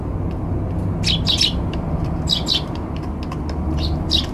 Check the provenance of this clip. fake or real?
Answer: real